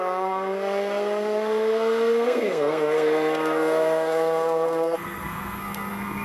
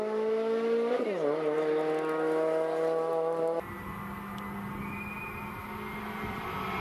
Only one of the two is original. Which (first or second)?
second